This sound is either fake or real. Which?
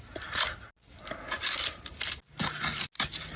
real